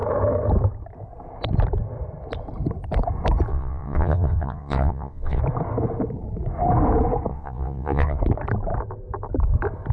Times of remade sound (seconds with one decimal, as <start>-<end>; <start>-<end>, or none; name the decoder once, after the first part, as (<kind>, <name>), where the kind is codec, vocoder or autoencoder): 3.5-5.4 (vocoder, WaveNeXt); 7.3-8.2